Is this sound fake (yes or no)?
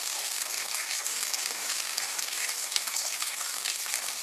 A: yes